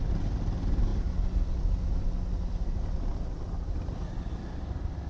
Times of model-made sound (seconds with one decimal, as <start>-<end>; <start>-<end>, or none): none